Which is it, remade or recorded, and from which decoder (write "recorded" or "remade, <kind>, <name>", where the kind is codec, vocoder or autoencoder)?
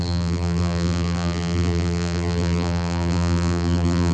remade, vocoder, BigVGAN v2